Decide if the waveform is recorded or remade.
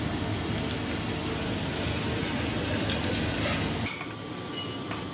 recorded